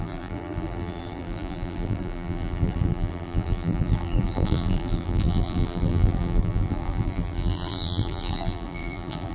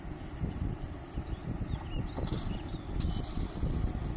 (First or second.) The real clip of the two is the second